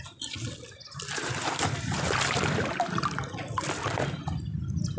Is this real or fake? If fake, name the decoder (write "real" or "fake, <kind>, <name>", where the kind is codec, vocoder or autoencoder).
real